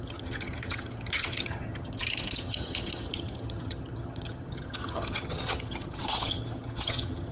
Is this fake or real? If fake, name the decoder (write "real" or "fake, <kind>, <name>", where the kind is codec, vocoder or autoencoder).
fake, vocoder, HiFi-GAN